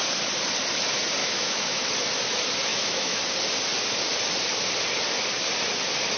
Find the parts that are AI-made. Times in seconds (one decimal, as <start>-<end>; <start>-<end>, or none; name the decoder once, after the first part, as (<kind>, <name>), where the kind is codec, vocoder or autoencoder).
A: 1.2-1.8 (autoencoder, DAC-VAE); 2.7-3.2